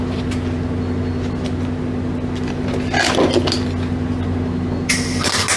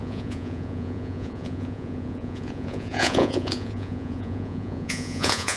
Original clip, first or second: first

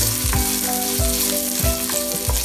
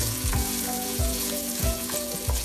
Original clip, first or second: first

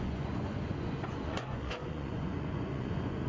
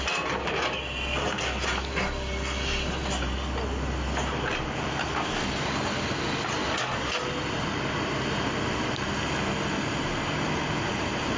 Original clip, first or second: second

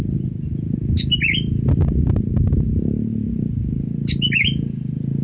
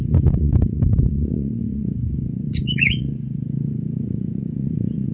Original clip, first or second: first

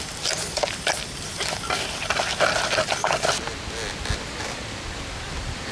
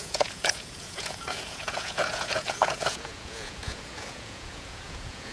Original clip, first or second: first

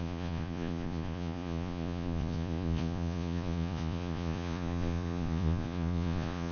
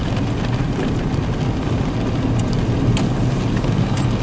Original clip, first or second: second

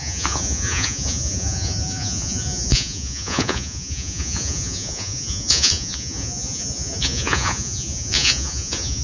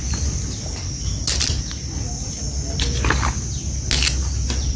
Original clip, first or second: second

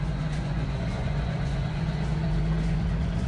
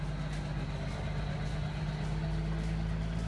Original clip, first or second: second